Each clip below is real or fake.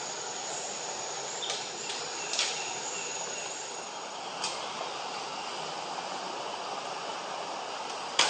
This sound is real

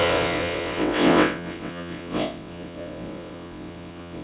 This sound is fake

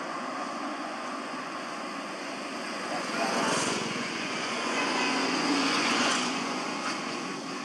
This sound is fake